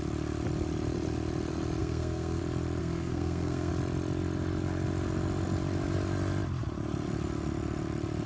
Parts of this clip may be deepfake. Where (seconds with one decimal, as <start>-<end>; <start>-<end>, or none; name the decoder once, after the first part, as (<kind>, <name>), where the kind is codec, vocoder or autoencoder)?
1.8-2.4 (codec, SNAC); 2.8-3.7